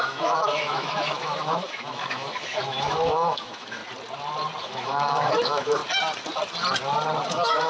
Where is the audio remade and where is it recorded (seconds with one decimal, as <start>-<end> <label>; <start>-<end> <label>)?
0.0-3.8 remade; 3.8-4.6 recorded; 4.6-5.8 remade; 5.8-7.3 recorded; 7.3-7.7 remade